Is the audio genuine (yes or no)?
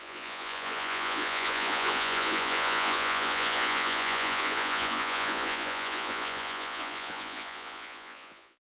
no